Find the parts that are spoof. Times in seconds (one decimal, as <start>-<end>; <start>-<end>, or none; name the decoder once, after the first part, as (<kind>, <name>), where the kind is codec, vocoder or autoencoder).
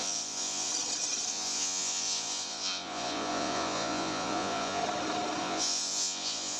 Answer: 0.0-0.7 (vocoder, Vocos); 1.3-4.8; 5.4-6.6